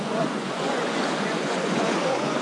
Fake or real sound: fake